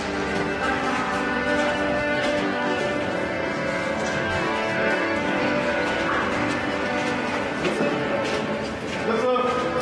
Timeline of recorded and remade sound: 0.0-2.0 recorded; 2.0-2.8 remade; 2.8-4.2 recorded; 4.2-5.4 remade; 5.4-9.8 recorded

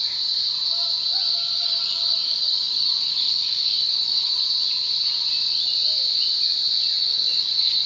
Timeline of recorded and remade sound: 0.0-1.5 recorded; 1.5-4.5 remade; 4.5-7.0 recorded; 7.0-7.9 remade

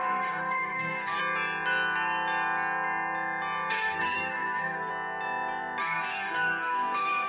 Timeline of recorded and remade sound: 0.0-1.2 remade; 1.2-3.7 recorded; 3.7-4.9 remade; 4.9-5.8 recorded; 5.8-7.3 remade